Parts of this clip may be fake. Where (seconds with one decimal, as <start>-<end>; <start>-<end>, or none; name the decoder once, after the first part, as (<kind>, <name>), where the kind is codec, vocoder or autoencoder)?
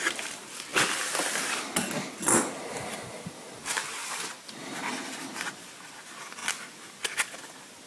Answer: none